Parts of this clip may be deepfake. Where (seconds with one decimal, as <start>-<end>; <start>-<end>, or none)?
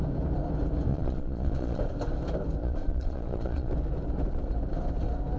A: 0.9-1.8; 2.6-3.7